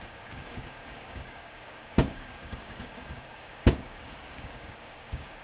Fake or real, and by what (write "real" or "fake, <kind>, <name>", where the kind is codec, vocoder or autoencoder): fake, codec, DAC